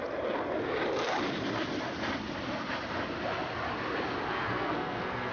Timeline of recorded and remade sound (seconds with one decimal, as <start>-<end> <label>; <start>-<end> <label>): 0.0-4.3 recorded; 4.3-5.3 remade